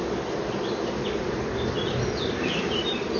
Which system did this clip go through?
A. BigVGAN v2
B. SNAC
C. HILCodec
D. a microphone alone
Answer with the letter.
D